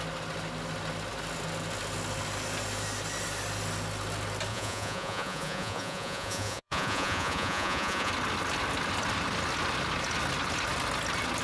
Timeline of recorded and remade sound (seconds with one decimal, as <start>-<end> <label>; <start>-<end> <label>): 0.0-4.5 recorded; 4.5-8.1 remade; 8.1-11.4 recorded